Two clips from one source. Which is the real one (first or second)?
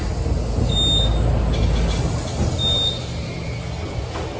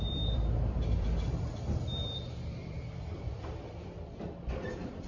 first